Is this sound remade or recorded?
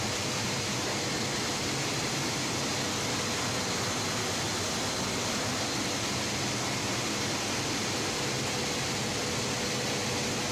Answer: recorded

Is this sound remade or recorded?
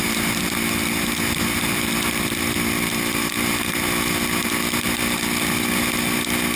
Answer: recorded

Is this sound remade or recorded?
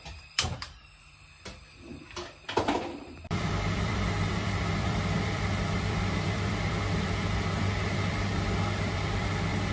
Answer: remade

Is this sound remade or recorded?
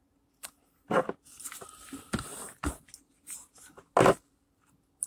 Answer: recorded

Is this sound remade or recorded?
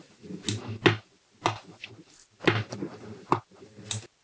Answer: recorded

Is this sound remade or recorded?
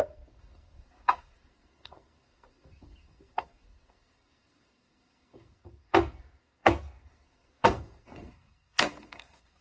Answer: remade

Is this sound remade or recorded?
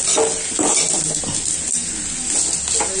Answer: recorded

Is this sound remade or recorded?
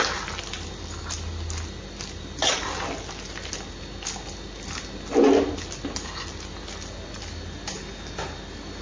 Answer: recorded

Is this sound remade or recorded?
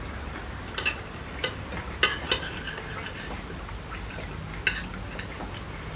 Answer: recorded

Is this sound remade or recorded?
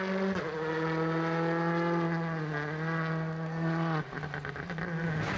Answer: recorded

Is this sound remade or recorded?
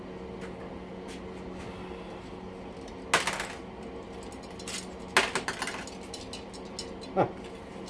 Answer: recorded